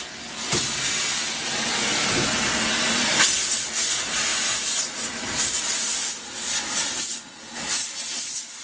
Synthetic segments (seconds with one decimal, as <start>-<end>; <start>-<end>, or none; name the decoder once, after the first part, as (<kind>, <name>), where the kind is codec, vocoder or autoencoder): none